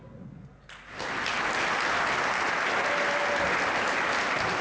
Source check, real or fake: real